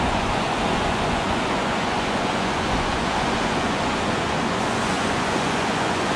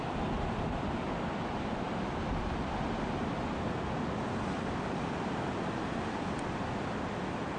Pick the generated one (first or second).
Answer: first